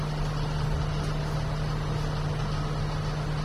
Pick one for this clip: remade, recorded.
recorded